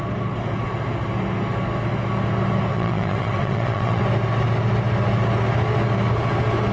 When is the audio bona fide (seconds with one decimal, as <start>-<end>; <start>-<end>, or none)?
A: 0.0-2.7; 4.0-6.7

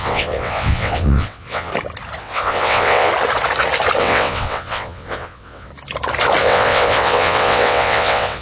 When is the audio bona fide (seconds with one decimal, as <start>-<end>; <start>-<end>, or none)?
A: 1.7-2.2; 3.1-4.0; 5.7-6.4

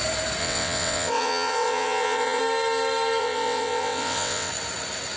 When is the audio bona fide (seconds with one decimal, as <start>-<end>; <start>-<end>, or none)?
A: 0.0-0.4; 2.4-3.2; 4.5-5.2

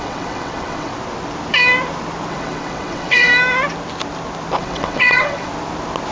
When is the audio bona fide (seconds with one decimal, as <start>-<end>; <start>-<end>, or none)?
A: 0.9-2.3; 3.3-4.6; 5.5-6.1

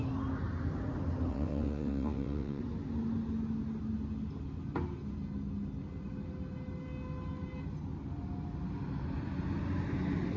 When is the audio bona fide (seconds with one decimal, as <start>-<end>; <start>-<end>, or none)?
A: 0.0-1.3; 2.6-10.4

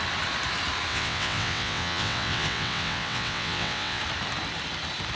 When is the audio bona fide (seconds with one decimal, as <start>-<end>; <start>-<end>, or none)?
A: 0.0-0.9; 4.0-5.2

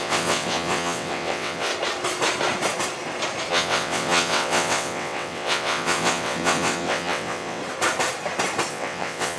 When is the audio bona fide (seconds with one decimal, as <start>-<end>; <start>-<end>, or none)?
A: 1.7-3.5; 7.6-8.7